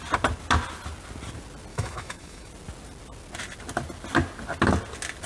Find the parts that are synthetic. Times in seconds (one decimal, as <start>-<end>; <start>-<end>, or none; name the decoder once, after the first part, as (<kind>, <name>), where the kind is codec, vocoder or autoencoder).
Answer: 1.7-2.5 (autoencoder, DAC-VAE)